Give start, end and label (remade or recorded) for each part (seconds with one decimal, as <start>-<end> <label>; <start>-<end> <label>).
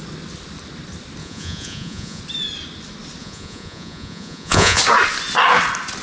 0.0-1.2 recorded; 1.2-2.2 remade; 2.2-3.2 recorded; 3.2-4.8 remade; 4.8-6.0 recorded